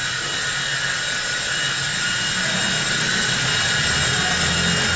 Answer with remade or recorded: recorded